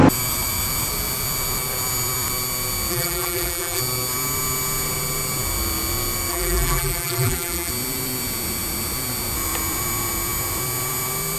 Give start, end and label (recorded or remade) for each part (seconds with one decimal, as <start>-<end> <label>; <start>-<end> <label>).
0.0-2.9 recorded; 2.9-3.8 remade; 3.8-6.3 recorded; 6.3-7.7 remade; 7.7-11.4 recorded